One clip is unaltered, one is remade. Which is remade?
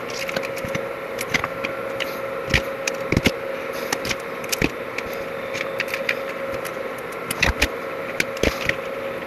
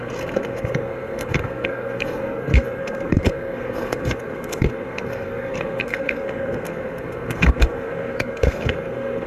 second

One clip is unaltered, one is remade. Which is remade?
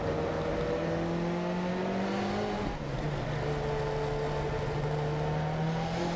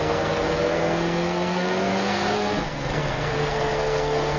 second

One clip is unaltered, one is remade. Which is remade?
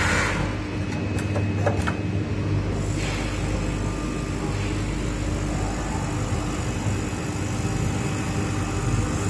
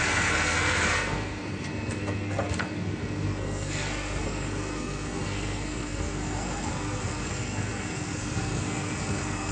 second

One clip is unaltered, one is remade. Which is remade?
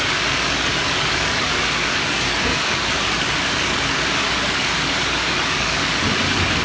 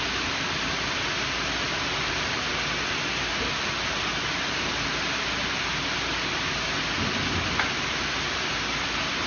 first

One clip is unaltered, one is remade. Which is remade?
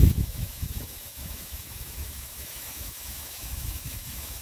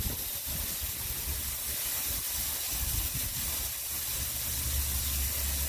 first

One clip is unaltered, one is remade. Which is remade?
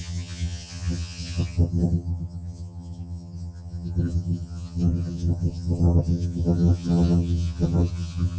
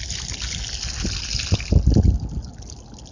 first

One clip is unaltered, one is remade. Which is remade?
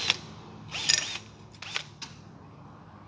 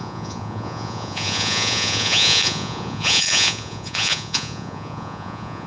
second